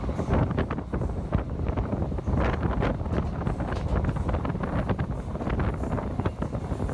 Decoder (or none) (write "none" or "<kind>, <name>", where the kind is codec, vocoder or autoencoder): none